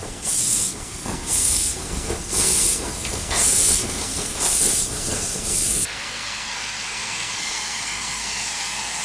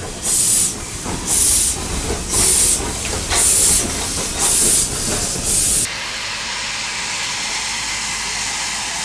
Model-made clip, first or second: first